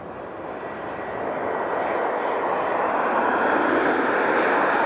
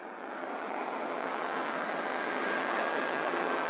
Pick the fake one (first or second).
second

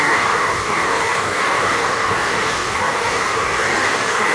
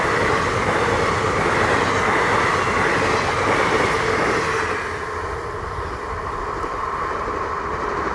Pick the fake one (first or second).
first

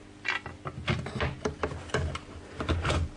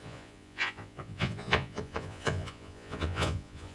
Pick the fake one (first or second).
second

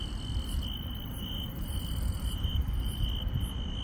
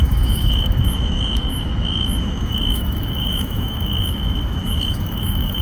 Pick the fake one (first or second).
second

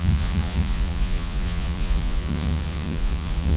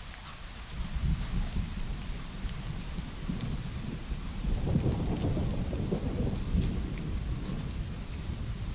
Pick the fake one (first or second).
first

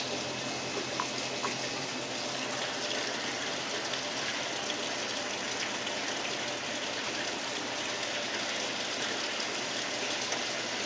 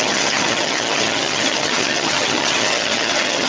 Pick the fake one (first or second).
second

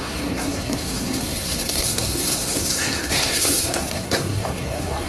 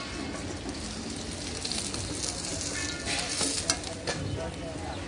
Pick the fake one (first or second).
first